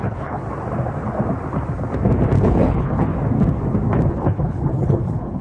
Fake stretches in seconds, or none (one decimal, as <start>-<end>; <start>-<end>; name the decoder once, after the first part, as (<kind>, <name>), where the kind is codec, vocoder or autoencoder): 0.0-0.4 (codec, HILCodec); 2.4-3.1; 4.1-5.4